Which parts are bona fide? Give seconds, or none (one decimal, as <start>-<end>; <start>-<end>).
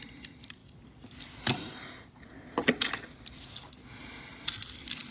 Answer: 0.0-5.1